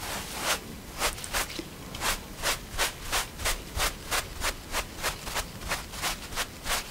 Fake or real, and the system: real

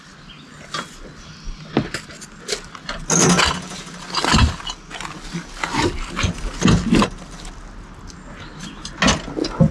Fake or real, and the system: real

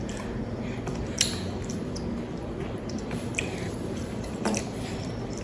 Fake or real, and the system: real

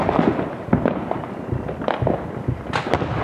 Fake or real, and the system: real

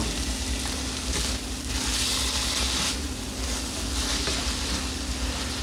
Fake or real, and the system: real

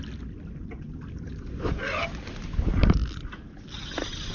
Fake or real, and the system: real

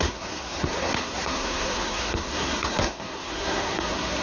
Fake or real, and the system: fake, codec, SNAC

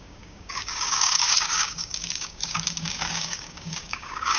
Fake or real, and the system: fake, codec, DAC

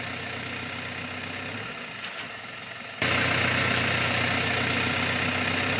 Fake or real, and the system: real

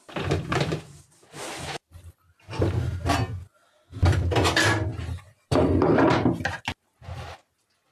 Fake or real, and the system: real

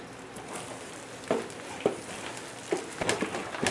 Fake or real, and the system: real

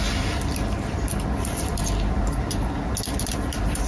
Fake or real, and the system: real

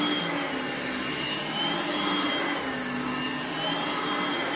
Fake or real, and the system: real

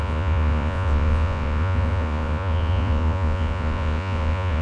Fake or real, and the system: fake, vocoder, Vocos